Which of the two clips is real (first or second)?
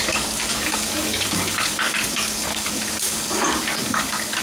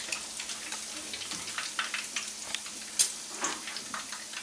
second